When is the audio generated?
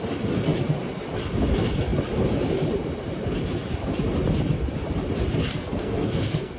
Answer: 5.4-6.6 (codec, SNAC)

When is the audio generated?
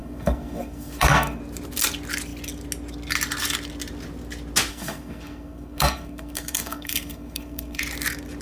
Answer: 0.0-1.4 (codec, SNAC); 4.7-7.8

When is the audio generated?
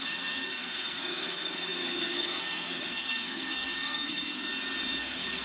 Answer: 0.0-4.5 (codec, SNAC); 5.0-5.4